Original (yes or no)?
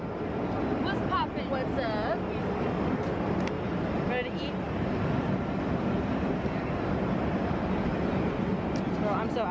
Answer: yes